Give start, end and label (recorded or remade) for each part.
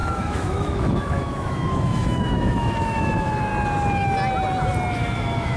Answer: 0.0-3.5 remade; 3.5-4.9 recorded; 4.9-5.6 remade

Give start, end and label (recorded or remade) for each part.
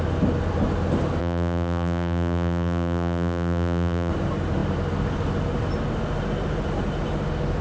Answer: 0.0-1.2 recorded; 1.2-4.1 remade; 4.1-7.6 recorded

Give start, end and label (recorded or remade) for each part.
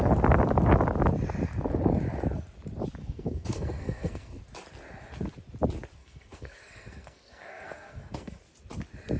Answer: 0.0-3.0 recorded; 3.0-4.4 remade; 4.4-6.0 recorded; 6.0-8.4 remade; 8.4-9.2 recorded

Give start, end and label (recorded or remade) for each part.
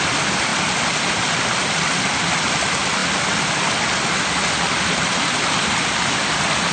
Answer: 0.0-6.7 recorded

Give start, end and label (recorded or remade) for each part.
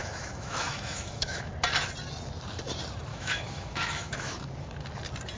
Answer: 0.0-1.5 remade; 1.5-3.1 recorded; 3.1-4.5 remade; 4.5-5.4 recorded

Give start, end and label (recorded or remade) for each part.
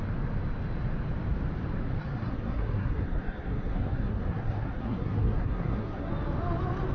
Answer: 0.0-2.0 recorded; 2.0-6.1 remade; 6.1-6.9 recorded